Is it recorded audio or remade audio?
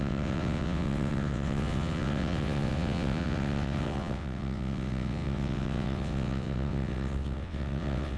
remade